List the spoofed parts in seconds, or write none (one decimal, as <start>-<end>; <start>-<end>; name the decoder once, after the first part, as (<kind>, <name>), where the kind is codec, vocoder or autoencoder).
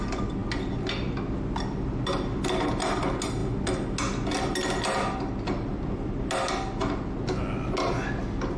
none